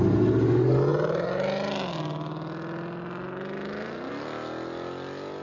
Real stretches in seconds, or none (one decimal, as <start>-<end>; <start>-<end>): 0.0-5.4